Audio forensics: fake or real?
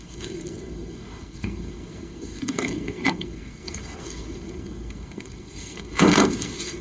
fake